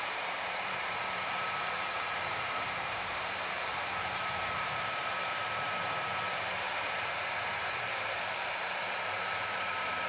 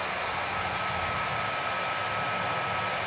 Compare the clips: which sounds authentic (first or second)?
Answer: second